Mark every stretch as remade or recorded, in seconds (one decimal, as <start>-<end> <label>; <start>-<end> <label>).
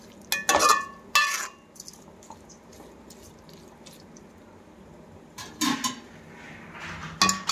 0.0-7.5 recorded